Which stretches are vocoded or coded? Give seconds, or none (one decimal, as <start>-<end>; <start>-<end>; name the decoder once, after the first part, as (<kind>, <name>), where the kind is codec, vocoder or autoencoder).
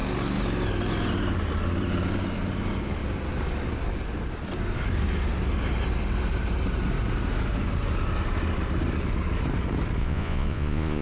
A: 10.0-11.0 (vocoder, Vocos)